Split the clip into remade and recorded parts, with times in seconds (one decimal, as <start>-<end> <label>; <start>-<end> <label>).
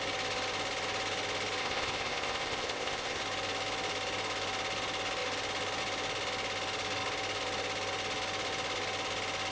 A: 0.0-1.6 recorded; 1.6-3.2 remade; 3.2-9.5 recorded